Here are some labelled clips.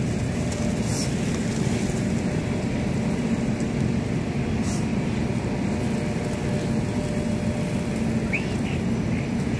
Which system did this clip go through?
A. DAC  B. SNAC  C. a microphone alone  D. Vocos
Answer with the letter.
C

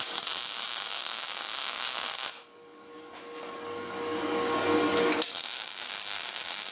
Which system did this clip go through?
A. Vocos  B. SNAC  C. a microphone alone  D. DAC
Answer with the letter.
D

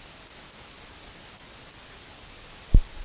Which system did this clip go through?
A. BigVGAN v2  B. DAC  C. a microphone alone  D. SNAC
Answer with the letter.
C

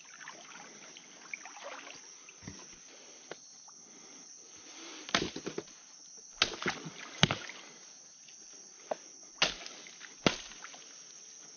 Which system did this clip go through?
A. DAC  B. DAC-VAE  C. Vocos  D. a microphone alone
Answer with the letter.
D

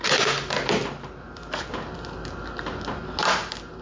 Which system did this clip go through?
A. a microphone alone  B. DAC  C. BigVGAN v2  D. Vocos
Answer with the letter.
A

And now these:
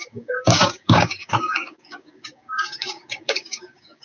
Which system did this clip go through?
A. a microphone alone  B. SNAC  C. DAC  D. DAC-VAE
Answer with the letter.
C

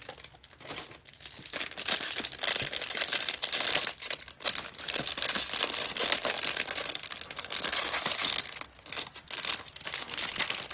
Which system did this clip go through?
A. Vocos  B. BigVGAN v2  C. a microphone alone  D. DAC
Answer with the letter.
C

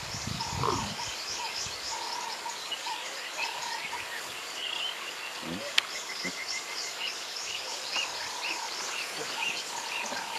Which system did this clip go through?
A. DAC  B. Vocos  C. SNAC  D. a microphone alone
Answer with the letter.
A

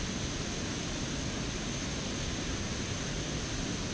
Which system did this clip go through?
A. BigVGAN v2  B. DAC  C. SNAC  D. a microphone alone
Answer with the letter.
D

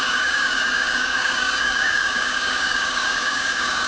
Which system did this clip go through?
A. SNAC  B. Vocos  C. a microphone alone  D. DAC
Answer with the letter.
D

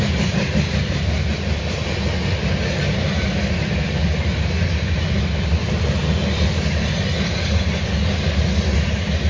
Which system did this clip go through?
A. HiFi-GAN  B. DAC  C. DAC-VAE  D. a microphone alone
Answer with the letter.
D